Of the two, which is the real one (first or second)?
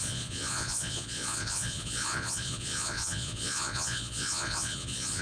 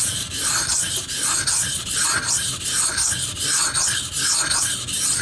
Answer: second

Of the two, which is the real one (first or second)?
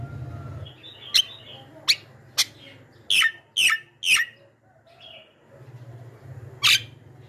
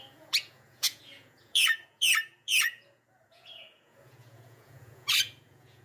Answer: first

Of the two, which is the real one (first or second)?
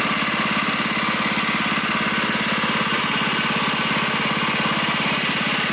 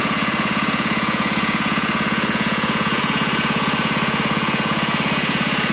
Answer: first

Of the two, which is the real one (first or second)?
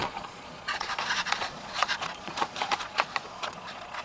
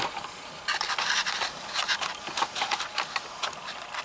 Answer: second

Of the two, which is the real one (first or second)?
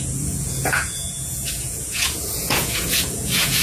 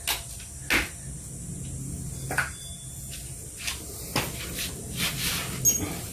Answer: second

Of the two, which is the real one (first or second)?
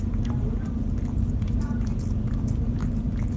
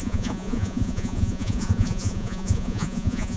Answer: first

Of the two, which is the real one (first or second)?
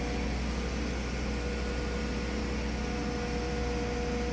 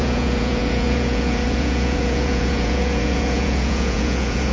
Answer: first